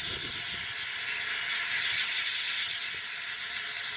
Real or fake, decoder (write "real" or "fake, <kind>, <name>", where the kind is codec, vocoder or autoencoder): real